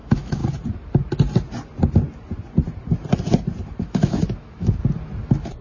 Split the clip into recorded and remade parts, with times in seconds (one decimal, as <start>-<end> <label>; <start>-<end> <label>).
0.0-0.4 remade; 0.4-3.8 recorded; 3.8-4.8 remade; 4.8-5.6 recorded